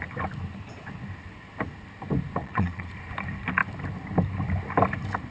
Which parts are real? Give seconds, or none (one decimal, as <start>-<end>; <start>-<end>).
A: 0.0-2.4; 2.9-5.3